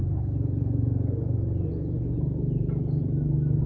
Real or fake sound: real